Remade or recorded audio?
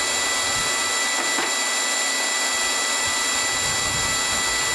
recorded